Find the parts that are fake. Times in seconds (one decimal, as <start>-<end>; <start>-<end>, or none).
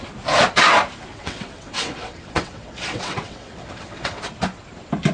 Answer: 1.1-4.2